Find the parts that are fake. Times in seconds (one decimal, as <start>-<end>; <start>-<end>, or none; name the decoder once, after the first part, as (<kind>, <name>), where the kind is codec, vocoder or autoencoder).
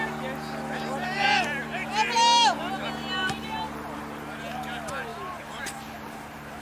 3.0-4.0 (vocoder, BigVGAN v2); 5.1-6.6